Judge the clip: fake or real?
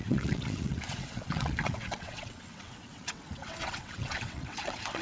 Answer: fake